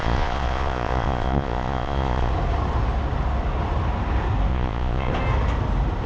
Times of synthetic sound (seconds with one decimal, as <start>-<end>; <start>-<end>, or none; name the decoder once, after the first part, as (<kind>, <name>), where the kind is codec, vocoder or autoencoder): 0.0-2.3 (vocoder, Vocos); 4.5-5.1